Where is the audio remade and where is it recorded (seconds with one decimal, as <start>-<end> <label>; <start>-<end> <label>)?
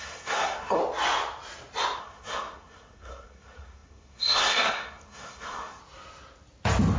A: 0.0-0.8 remade; 0.8-2.0 recorded; 2.0-5.8 remade; 5.8-7.0 recorded